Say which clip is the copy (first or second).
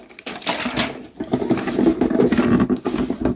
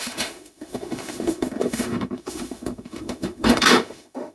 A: second